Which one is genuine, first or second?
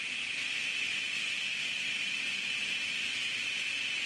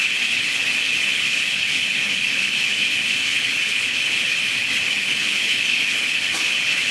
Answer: first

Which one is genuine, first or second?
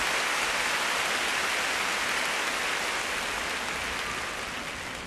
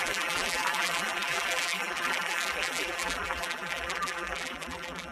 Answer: first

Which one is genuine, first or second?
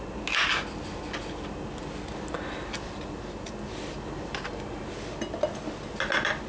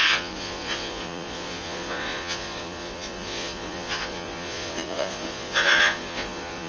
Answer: first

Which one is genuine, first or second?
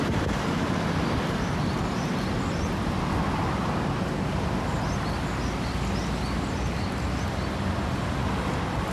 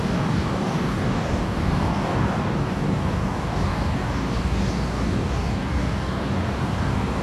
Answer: first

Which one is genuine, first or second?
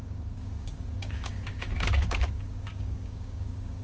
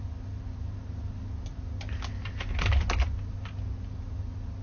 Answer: second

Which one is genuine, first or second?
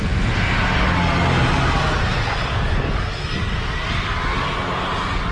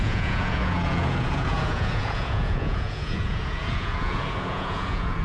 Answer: first